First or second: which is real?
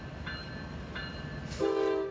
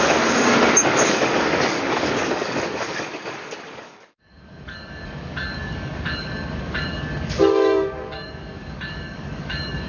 first